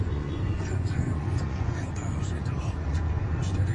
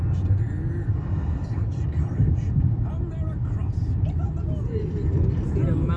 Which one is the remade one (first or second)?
first